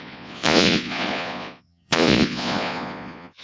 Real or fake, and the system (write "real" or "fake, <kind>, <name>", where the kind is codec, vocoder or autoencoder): fake, vocoder, Vocos